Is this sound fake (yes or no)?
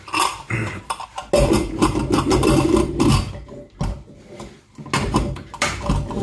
no